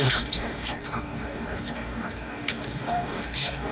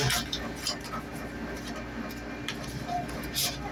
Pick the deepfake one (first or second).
first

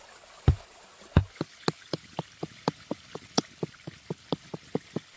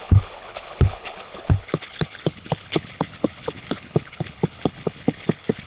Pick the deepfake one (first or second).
second